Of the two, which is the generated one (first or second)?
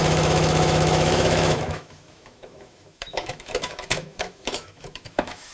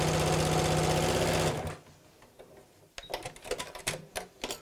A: first